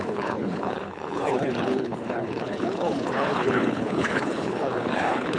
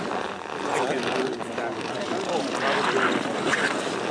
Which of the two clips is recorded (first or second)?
second